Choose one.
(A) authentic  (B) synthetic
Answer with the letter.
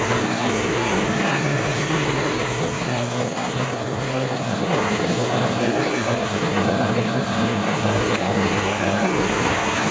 B